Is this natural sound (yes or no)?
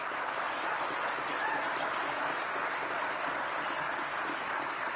yes